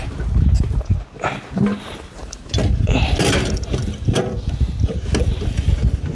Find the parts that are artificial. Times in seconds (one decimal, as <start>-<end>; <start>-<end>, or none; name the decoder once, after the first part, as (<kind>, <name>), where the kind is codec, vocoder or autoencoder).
none